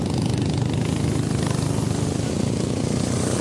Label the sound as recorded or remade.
recorded